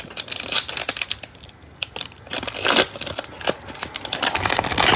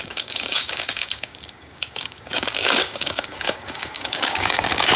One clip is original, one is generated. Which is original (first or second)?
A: first